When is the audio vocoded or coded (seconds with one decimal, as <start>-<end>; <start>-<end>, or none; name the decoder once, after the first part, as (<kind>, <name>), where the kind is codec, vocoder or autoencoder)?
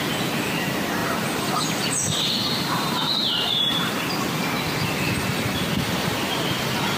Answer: 1.0-3.9 (vocoder, BigVGAN v2)